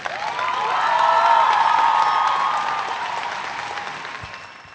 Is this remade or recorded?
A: recorded